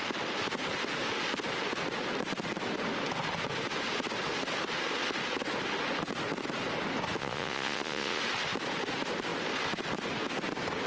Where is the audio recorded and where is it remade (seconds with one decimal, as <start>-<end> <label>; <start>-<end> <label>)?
0.0-7.2 recorded; 7.2-8.2 remade; 8.2-10.9 recorded